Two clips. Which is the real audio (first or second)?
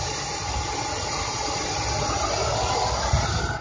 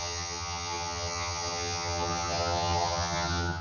first